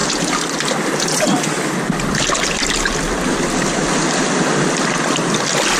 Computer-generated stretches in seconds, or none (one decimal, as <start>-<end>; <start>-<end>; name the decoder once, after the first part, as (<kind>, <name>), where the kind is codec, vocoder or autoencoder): none

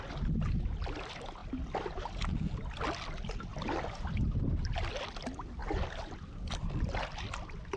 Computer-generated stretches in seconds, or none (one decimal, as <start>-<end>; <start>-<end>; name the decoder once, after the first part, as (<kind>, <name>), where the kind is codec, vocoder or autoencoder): none